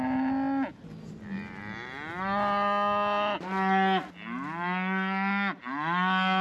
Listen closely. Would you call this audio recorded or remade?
recorded